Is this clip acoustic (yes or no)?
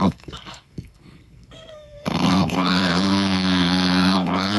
no